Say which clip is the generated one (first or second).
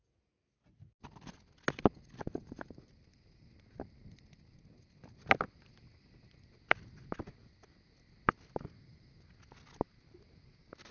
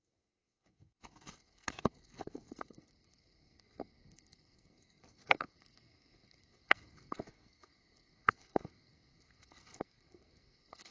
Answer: second